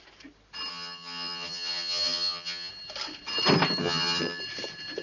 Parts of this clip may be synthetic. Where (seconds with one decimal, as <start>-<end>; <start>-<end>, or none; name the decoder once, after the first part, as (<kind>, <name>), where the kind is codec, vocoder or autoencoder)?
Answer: 0.7-2.7 (vocoder, HiFi-GAN); 3.8-4.4